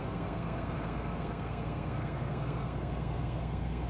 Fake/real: fake